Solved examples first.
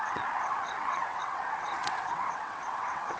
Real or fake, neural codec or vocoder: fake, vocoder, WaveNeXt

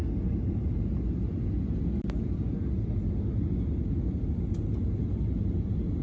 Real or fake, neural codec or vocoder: real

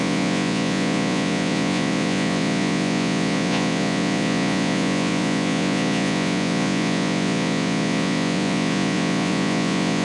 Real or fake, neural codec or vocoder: fake, vocoder, Vocos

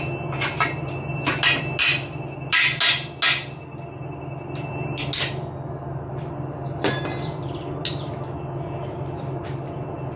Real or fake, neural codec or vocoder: real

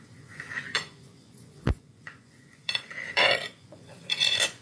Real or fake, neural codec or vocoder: fake, vocoder, Vocos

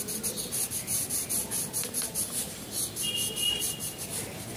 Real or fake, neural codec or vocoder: real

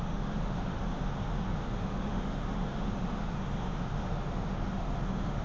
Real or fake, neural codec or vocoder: fake, autoencoder, DAC-VAE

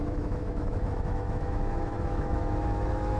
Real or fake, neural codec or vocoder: fake, autoencoder, DAC-VAE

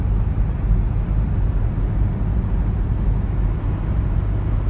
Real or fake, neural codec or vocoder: real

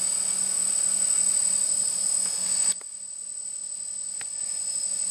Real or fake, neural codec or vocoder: real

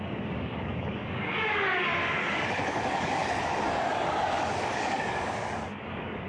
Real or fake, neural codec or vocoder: fake, codec, DAC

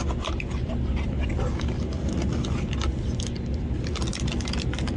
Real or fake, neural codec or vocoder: real